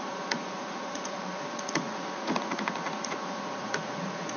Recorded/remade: remade